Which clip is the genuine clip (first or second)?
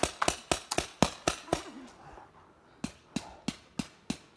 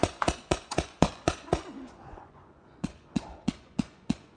first